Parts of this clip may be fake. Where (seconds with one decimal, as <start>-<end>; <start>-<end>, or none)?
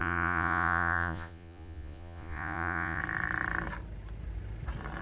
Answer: 0.0-3.0